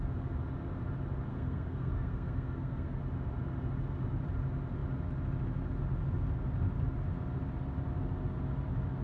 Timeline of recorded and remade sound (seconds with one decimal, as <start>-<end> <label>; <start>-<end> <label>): 0.0-1.3 recorded; 1.3-3.0 remade; 3.0-9.0 recorded